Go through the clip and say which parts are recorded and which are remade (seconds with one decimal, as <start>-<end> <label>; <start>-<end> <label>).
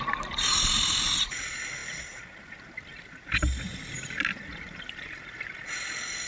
0.0-6.3 recorded